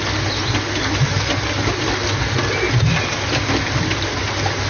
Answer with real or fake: real